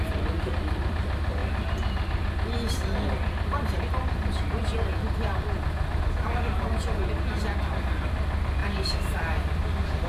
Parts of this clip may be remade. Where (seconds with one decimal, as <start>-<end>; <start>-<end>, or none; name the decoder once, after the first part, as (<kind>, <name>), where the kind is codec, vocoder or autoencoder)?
none